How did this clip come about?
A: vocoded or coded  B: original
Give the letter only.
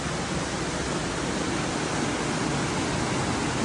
B